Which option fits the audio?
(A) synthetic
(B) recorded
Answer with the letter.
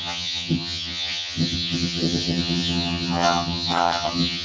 A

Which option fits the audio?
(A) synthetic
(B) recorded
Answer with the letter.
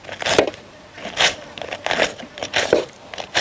B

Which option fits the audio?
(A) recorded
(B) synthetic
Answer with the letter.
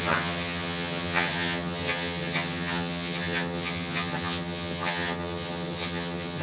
B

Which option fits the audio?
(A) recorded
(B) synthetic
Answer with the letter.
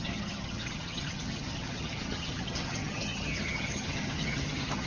B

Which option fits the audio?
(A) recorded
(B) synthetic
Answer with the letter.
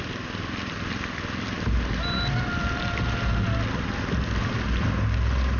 A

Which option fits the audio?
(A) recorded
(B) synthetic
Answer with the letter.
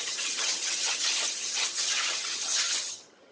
B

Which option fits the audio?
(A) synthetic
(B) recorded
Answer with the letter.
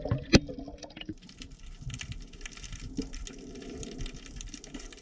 B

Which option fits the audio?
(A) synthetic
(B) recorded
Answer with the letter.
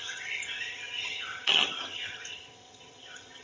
A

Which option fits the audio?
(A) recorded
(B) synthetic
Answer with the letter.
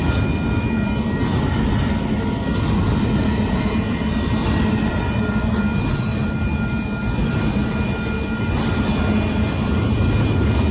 A